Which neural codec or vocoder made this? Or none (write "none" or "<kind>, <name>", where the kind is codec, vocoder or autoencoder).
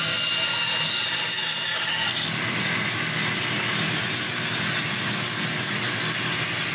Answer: none